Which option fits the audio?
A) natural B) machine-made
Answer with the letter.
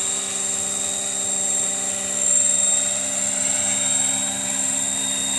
A